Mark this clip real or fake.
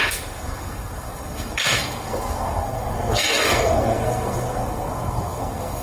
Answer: fake